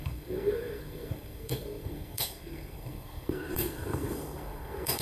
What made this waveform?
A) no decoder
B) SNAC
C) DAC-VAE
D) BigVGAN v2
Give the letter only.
B